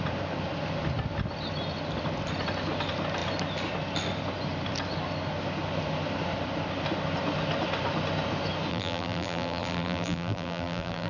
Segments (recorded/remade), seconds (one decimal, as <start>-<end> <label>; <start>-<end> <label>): 0.0-8.7 recorded; 8.7-11.1 remade